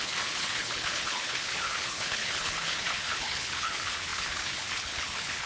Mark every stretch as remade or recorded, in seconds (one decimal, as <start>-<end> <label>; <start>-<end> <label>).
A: 0.0-5.5 remade